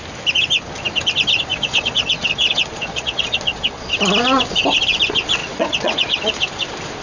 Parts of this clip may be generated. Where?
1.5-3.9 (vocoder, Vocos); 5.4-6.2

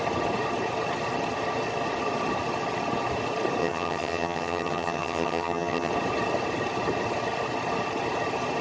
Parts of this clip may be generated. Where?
3.6-5.9 (vocoder, HiFi-GAN)